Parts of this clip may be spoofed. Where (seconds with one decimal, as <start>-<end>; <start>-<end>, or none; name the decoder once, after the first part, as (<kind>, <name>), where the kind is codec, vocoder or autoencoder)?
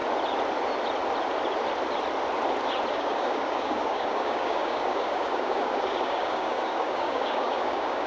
2.9-8.1 (codec, DAC)